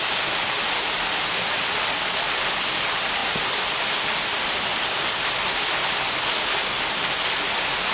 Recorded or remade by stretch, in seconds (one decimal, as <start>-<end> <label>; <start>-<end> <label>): 0.0-7.9 recorded